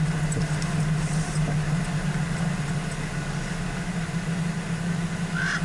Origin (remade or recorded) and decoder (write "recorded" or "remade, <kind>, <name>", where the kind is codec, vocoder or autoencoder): recorded